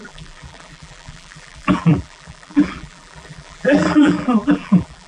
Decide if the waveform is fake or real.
fake